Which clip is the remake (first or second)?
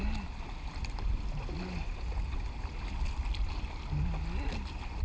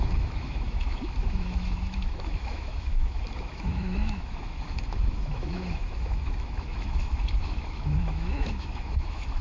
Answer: second